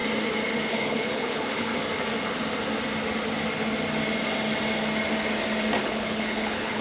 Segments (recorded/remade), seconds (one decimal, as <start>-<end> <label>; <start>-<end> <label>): 0.0-0.7 recorded; 0.7-1.7 remade; 1.7-5.8 recorded; 5.8-6.8 remade